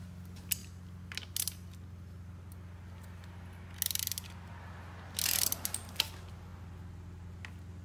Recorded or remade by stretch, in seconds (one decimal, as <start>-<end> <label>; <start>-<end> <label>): 0.0-7.8 recorded